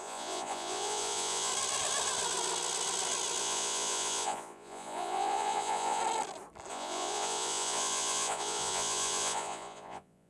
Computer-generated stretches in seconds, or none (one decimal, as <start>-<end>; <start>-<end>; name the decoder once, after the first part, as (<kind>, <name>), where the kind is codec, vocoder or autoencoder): 0.0-1.5 (vocoder, Vocos); 3.4-6.0; 6.7-10.3